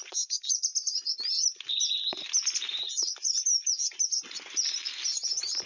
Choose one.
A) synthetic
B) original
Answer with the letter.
B